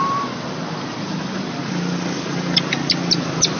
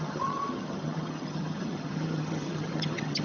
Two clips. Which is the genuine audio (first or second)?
first